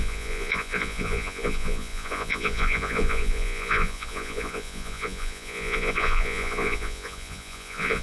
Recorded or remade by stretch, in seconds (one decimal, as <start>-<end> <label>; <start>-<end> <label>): 0.0-8.0 remade